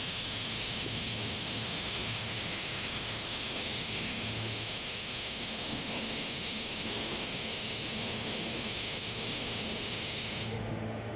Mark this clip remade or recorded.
remade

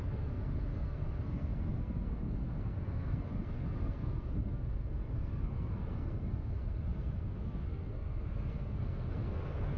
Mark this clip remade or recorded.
remade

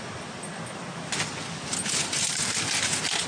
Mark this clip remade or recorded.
recorded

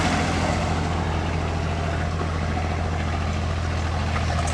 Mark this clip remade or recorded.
recorded